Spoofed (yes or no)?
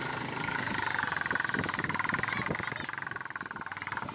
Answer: no